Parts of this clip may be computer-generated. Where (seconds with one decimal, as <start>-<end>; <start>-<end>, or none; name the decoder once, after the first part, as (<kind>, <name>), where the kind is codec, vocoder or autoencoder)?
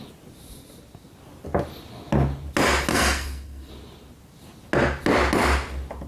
2.9-3.7 (codec, SNAC)